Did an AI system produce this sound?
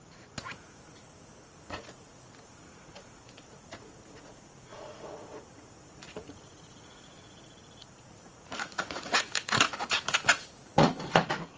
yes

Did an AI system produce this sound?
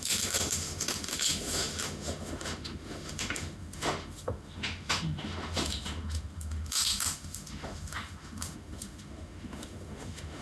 yes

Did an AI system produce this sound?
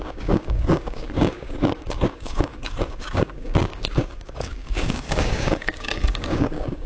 yes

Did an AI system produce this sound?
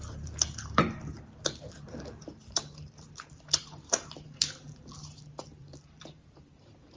yes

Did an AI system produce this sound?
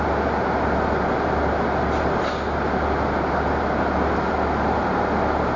no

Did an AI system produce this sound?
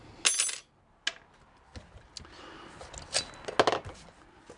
no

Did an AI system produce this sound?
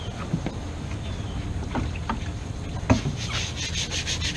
no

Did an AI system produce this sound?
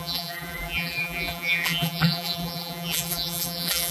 yes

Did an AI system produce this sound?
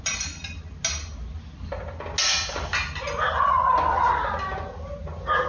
no